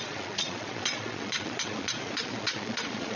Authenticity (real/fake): fake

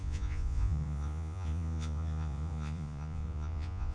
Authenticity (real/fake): fake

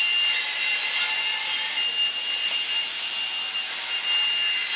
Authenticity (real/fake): real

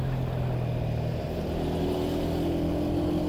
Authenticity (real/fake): real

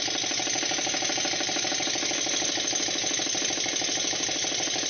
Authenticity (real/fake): real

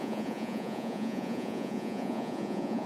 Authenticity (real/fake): fake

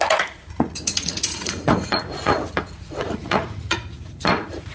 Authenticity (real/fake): fake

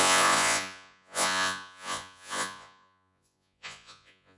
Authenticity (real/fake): fake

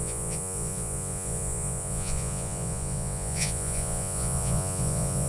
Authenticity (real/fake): fake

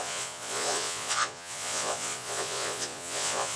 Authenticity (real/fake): fake